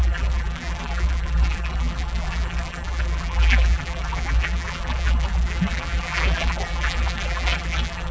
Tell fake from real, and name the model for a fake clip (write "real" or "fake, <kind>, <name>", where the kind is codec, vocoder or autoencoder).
fake, vocoder, BigVGAN v2